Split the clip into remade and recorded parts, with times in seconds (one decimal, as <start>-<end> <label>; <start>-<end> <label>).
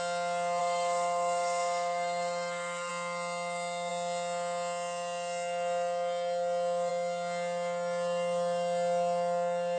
0.0-0.6 recorded; 0.6-2.9 remade; 2.9-9.8 recorded